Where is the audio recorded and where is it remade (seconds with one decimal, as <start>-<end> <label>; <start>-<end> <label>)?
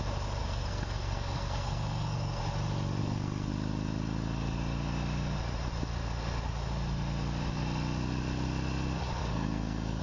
0.0-0.4 recorded; 0.4-2.4 remade; 2.4-3.0 recorded; 3.0-3.5 remade; 3.5-9.2 recorded; 9.2-10.0 remade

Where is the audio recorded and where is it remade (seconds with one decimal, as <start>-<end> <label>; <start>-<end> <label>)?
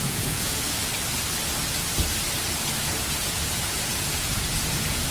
0.0-0.8 remade; 0.8-2.8 recorded; 2.8-5.1 remade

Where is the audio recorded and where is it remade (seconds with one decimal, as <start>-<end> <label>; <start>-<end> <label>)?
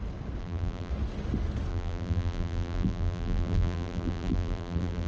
0.0-0.4 recorded; 0.4-0.9 remade; 0.9-1.7 recorded; 1.7-5.1 remade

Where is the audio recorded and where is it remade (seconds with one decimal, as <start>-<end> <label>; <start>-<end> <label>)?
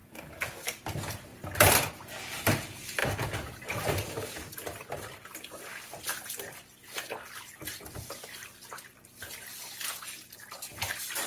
0.0-0.8 remade; 0.8-11.3 recorded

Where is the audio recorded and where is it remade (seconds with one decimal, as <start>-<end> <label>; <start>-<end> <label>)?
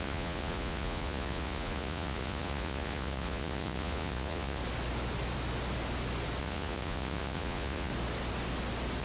0.0-4.6 remade; 4.6-6.4 recorded; 6.4-7.9 remade; 7.9-9.0 recorded